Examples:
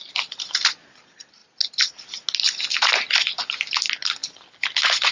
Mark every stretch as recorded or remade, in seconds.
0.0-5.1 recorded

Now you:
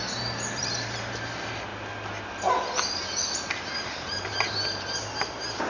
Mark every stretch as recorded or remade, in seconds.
0.0-1.7 remade; 1.7-3.8 recorded; 3.8-5.7 remade

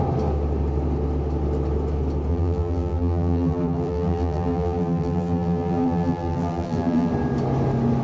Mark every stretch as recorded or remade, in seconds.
0.0-2.3 recorded; 2.3-7.1 remade; 7.1-8.0 recorded

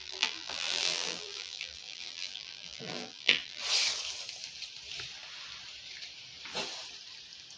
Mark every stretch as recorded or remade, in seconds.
0.0-3.6 remade; 3.6-7.6 recorded